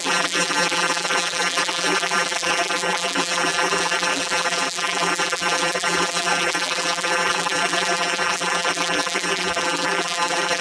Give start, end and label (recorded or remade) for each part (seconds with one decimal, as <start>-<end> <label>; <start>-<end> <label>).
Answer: 0.0-10.6 remade